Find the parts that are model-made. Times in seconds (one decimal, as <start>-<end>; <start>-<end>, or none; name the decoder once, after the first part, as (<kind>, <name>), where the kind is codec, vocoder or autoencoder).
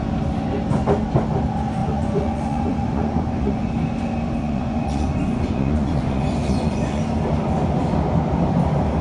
1.8-3.7 (vocoder, Vocos); 4.4-7.0